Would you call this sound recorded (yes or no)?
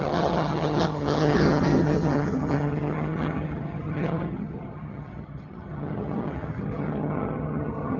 no